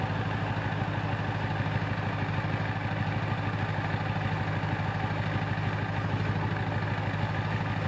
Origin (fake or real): real